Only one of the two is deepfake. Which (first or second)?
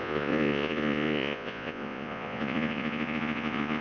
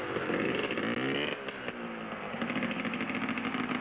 first